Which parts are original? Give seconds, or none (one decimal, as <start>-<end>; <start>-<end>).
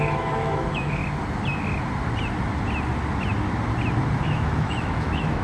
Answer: 1.0-4.2